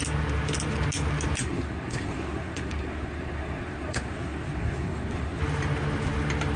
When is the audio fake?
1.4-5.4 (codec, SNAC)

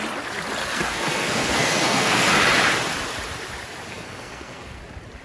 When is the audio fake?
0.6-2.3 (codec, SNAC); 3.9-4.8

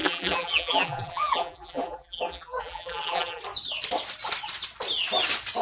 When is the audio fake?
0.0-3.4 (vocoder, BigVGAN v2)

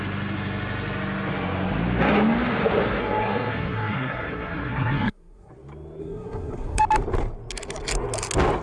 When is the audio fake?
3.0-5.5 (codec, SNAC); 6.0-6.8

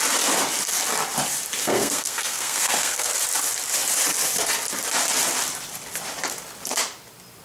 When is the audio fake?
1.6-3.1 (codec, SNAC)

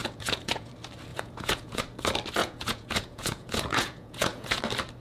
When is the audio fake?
0.0-0.7 (vocoder, Vocos); 1.1-1.8; 2.4-4.6

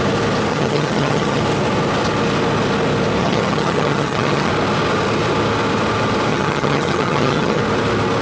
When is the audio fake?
0.5-1.4 (vocoder, HiFi-GAN); 3.2-4.5; 6.3-7.6